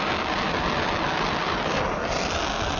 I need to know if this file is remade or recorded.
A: recorded